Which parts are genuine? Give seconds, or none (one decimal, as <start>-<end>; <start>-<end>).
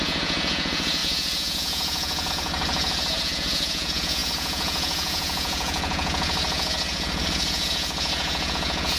none